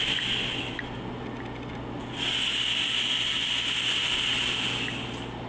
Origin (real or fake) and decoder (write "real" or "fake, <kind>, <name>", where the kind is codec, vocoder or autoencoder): real